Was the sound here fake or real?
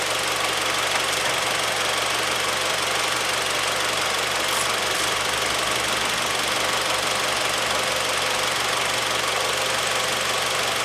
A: real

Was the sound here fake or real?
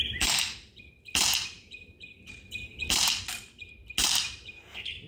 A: real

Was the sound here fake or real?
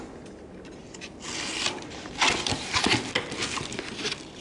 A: real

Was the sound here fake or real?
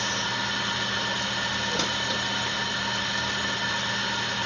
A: real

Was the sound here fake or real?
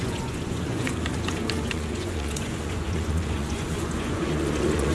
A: fake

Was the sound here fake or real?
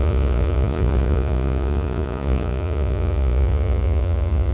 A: fake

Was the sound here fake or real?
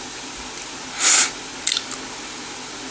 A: real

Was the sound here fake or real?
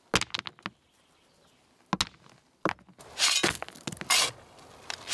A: real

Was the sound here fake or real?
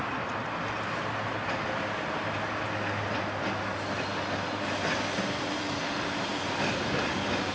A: real